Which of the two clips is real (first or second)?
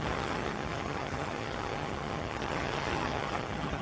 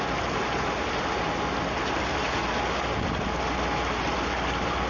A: second